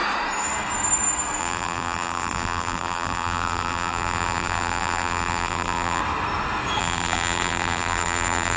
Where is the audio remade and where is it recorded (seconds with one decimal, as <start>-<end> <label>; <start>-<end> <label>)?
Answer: 0.0-1.4 recorded; 1.4-6.0 remade; 6.0-6.8 recorded; 6.8-8.6 remade